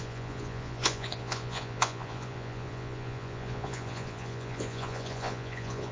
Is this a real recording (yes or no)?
no